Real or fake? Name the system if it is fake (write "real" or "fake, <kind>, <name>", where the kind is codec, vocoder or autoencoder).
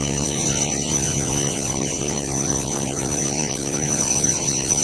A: fake, vocoder, WaveNeXt